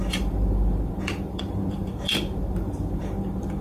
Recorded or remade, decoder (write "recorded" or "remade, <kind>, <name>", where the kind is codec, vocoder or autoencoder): remade, vocoder, BigVGAN v2